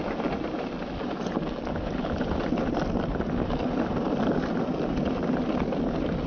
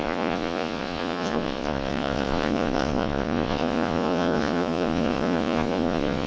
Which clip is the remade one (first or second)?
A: second